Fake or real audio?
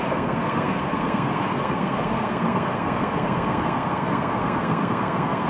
fake